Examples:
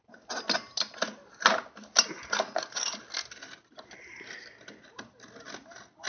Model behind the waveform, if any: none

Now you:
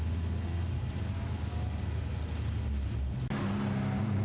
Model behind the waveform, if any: none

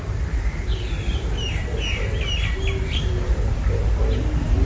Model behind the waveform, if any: none